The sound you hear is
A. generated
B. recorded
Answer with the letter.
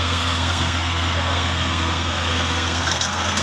A